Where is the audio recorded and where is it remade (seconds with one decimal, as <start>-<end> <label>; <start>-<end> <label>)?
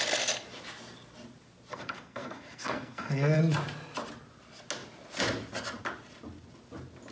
0.0-1.7 recorded; 1.7-3.4 remade; 3.4-7.1 recorded